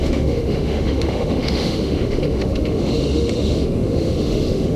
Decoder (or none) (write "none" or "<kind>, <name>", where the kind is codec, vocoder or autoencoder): autoencoder, DAC-VAE